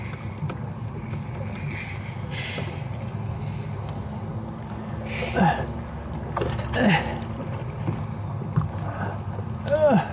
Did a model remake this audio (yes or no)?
no